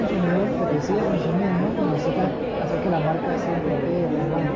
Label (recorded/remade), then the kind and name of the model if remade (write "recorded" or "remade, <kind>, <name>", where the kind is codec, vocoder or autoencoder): recorded